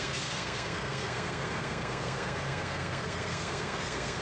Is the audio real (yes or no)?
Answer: no